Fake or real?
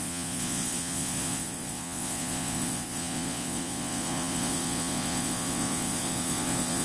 fake